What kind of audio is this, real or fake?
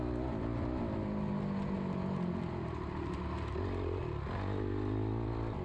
real